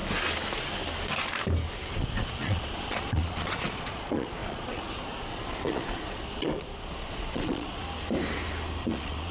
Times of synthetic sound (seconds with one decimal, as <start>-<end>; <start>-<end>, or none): 1.9-7.8; 8.8-9.3